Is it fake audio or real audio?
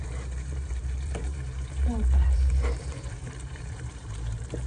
fake